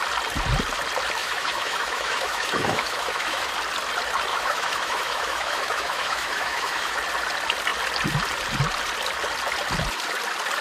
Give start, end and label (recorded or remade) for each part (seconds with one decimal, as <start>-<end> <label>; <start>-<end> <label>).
0.0-1.2 recorded; 1.2-3.5 remade; 3.5-4.3 recorded; 4.3-7.0 remade; 7.0-10.6 recorded